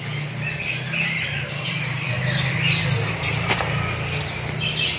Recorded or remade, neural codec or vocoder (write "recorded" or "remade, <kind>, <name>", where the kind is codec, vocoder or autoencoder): recorded